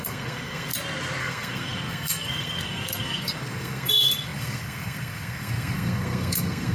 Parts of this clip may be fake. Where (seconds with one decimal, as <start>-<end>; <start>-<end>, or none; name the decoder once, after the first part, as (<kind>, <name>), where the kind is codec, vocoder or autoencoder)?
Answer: 0.0-0.7 (codec, SNAC); 1.2-6.7